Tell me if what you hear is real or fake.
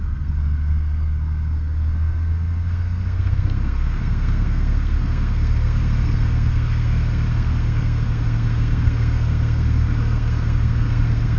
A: fake